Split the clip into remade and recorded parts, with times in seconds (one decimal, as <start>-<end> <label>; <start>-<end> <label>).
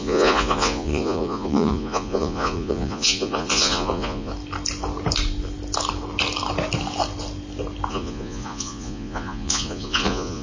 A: 0.0-4.3 remade; 4.3-7.9 recorded; 7.9-10.4 remade